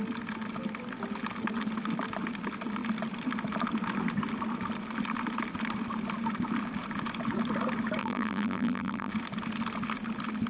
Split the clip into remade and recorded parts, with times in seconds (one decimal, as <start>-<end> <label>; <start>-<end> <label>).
0.0-8.0 recorded; 8.0-9.1 remade; 9.1-10.5 recorded